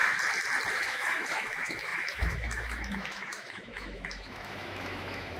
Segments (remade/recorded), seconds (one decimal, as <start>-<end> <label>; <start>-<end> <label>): 0.0-0.7 recorded; 0.7-5.4 remade